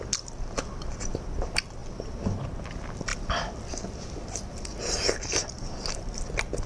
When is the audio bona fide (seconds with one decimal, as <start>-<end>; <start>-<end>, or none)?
0.0-6.7